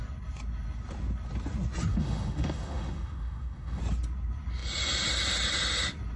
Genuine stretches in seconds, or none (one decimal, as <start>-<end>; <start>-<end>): 0.0-1.9; 3.8-6.2